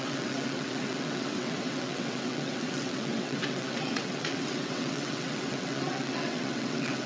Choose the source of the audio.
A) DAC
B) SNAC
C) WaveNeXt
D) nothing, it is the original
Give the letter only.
C